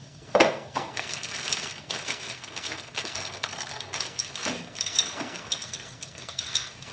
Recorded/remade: remade